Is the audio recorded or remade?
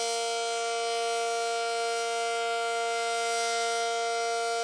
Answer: recorded